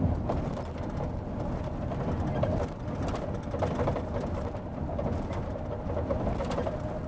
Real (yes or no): yes